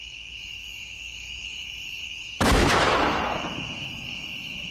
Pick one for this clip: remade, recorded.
remade